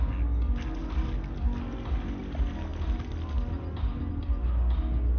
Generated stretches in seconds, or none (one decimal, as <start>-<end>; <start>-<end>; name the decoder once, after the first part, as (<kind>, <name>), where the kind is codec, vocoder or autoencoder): none

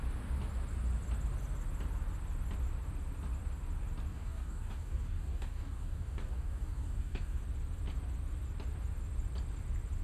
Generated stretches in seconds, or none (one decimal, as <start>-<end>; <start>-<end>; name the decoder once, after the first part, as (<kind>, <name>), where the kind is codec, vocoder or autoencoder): 4.1-7.4 (codec, DAC)

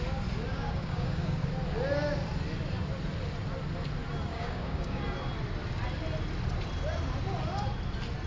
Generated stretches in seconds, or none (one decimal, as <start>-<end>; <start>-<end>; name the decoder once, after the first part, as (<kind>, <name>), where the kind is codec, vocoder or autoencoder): 0.5-1.5 (codec, DAC); 4.3-5.0

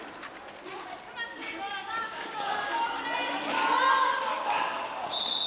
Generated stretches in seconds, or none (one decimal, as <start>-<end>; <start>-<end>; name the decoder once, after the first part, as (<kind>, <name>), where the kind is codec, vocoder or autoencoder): 1.3-3.0 (codec, DAC); 4.0-5.1

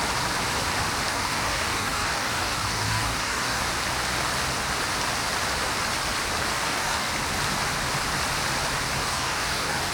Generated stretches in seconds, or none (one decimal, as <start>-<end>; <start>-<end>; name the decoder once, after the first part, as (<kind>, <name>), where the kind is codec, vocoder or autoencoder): 1.1-3.6 (codec, DAC); 6.5-7.1; 9.0-9.9

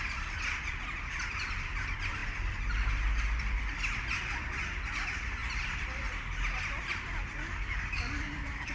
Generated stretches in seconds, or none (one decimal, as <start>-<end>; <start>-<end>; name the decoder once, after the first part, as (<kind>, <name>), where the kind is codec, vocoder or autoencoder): 7.4-8.7 (codec, DAC)

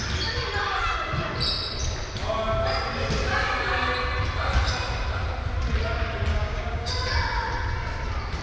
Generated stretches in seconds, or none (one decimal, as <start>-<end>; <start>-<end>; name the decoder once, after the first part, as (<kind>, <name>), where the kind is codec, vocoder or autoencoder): 6.3-6.9 (codec, DAC)